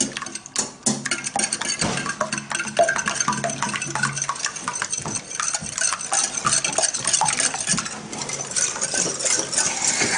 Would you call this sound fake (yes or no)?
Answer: no